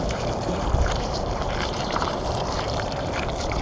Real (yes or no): no